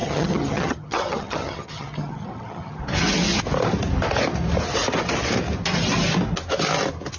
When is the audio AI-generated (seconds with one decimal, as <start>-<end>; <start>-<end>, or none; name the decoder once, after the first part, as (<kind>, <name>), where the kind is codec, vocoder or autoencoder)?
0.0-2.8 (vocoder, HiFi-GAN)